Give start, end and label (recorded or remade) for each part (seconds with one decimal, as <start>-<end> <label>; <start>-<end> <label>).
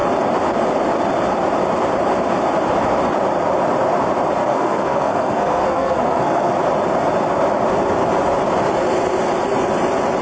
0.0-4.4 recorded; 4.4-6.5 remade; 6.5-10.2 recorded